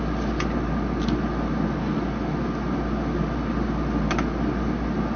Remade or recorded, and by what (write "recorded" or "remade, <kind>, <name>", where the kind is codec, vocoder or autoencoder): recorded